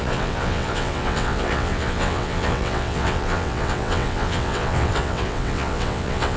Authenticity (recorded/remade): remade